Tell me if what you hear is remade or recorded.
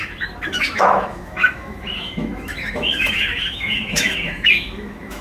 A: remade